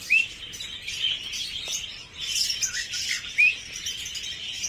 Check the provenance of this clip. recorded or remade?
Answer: recorded